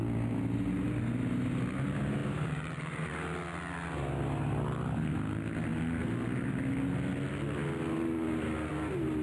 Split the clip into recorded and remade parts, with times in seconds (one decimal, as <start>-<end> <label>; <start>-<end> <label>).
0.0-2.2 recorded; 2.2-3.1 remade; 3.1-9.2 recorded